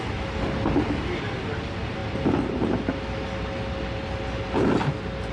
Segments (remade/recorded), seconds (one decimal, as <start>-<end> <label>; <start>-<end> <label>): 0.0-5.3 recorded

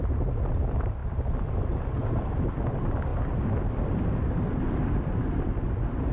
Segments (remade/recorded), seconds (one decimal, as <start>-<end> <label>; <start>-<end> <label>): 0.0-6.1 recorded

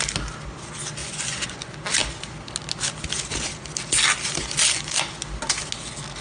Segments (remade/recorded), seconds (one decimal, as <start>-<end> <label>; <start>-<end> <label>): 0.0-1.0 recorded; 1.0-1.6 remade; 1.6-6.2 recorded

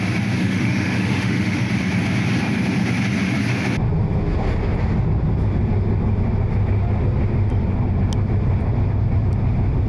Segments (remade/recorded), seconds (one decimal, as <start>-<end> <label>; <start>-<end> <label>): 0.0-0.4 recorded; 0.4-1.7 remade; 1.7-9.9 recorded

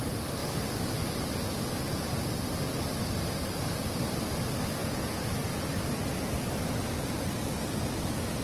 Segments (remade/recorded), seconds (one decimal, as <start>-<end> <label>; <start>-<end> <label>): 0.0-4.8 recorded; 4.8-5.3 remade; 5.3-8.4 recorded

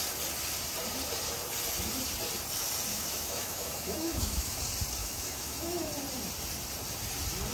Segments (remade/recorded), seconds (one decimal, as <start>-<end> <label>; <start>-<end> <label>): 0.0-2.9 recorded; 2.9-4.6 remade; 4.6-5.0 recorded; 5.0-5.9 remade; 5.9-7.5 recorded